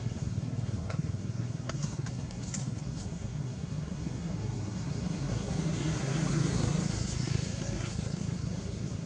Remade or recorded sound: remade